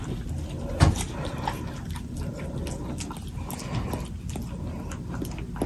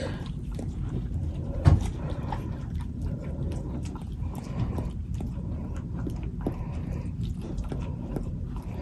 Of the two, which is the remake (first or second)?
second